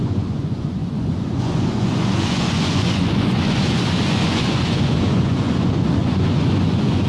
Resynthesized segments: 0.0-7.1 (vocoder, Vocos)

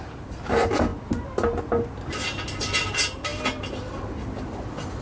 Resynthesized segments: none

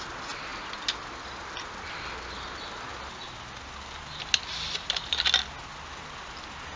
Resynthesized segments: none

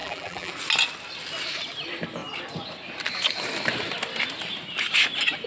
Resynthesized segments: 0.0-0.5 (vocoder, BigVGAN v2)

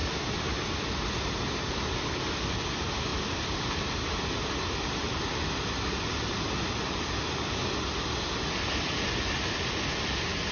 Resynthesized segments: none